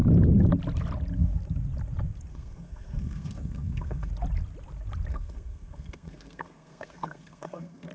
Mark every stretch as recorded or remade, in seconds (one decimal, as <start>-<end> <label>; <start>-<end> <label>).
0.0-2.3 recorded; 2.3-4.1 remade; 4.1-5.1 recorded; 5.1-7.9 remade